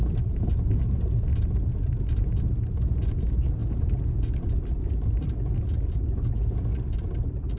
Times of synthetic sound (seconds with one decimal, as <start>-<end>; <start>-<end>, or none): none